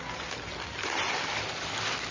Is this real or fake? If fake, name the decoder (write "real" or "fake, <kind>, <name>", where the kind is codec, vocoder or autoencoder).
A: real